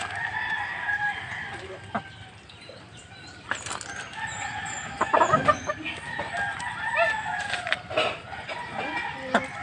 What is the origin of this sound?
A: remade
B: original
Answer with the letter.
B